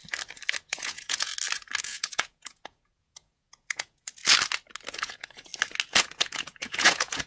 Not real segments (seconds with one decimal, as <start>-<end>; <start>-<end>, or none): 0.7-1.3; 1.8-4.2; 4.9-5.5; 6.0-7.3